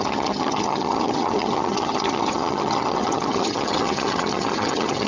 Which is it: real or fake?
fake